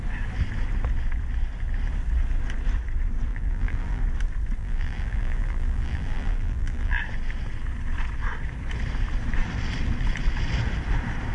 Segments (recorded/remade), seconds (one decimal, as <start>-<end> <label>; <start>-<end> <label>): 0.0-3.3 recorded; 3.3-4.0 remade; 4.0-4.6 recorded; 4.6-7.0 remade; 7.0-11.3 recorded